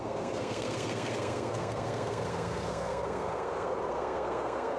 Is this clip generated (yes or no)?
yes